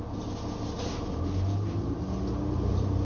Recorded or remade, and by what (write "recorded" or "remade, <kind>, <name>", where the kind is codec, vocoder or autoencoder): recorded